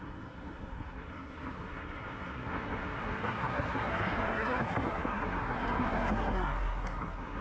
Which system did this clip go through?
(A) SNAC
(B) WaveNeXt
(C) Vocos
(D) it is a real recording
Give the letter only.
A